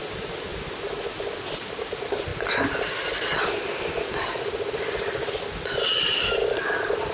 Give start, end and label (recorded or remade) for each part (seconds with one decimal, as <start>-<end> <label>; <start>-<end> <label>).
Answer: 0.0-0.5 remade; 0.5-1.6 recorded; 1.6-2.3 remade; 2.3-6.6 recorded; 6.6-7.1 remade